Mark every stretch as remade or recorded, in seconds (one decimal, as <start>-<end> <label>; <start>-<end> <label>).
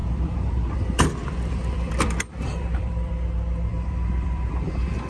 0.0-3.1 remade; 3.1-3.7 recorded; 3.7-4.5 remade; 4.5-5.1 recorded